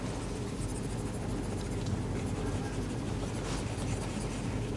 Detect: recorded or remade recorded